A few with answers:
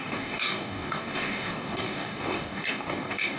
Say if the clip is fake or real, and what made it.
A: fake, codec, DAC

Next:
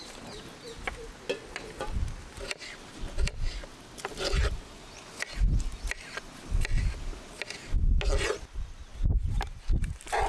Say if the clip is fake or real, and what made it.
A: real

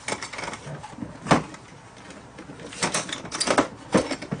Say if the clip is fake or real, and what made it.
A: real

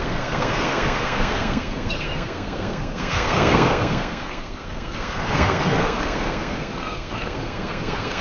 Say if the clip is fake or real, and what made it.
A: fake, codec, SNAC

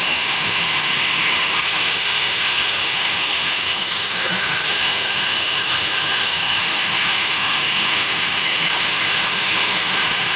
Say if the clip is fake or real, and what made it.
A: fake, autoencoder, DAC-VAE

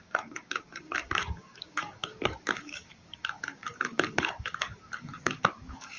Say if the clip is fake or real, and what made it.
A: fake, codec, DAC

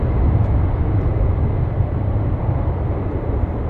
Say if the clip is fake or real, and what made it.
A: real